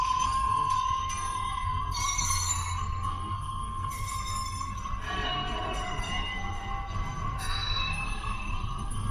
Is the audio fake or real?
fake